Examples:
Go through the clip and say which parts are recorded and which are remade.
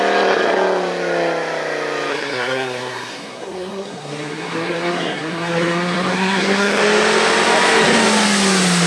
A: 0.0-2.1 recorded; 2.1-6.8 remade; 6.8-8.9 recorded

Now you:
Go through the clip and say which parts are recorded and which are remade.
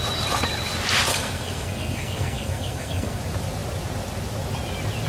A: 0.0-1.1 recorded; 1.1-3.2 remade; 3.2-5.1 recorded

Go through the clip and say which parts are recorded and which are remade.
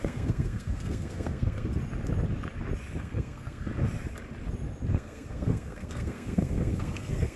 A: 0.0-1.7 remade; 1.7-3.0 recorded; 3.0-3.7 remade; 3.7-4.9 recorded; 4.9-7.4 remade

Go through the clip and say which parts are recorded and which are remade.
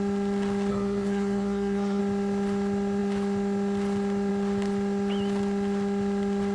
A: 0.0-0.7 recorded; 0.7-2.0 remade; 2.0-6.5 recorded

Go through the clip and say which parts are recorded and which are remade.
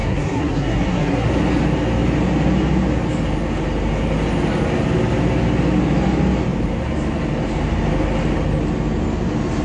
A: 0.0-1.3 remade; 1.3-9.6 recorded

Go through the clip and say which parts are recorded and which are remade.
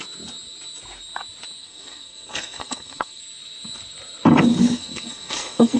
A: 0.0-1.6 recorded; 1.6-3.2 remade; 3.2-4.5 recorded; 4.5-5.8 remade